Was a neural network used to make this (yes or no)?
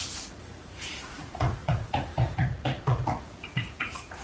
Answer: yes